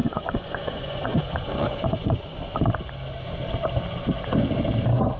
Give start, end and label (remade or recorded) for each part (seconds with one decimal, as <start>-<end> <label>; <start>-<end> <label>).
0.0-2.7 remade; 2.7-5.2 recorded